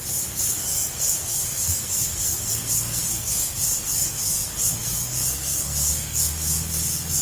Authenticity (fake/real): fake